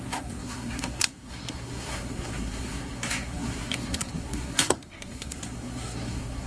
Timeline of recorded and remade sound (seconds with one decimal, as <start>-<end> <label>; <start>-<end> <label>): 0.0-6.5 remade